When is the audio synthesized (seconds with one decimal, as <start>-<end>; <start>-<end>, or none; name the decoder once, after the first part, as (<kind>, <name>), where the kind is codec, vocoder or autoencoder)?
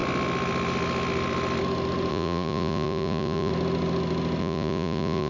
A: 2.1-3.5 (vocoder, Vocos); 4.4-5.3